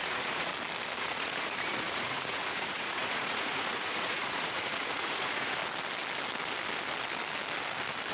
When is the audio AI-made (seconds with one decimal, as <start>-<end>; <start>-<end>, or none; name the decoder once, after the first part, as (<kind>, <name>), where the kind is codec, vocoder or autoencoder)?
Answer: 0.0-0.5 (vocoder, Vocos); 1.0-5.6